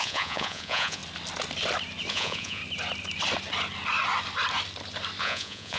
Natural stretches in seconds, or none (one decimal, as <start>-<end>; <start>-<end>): 1.0-2.1; 2.6-5.2